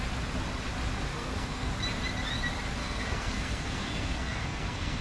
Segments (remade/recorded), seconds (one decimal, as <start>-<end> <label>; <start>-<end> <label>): 0.0-1.1 recorded; 1.1-1.7 remade; 1.7-2.8 recorded; 2.8-5.0 remade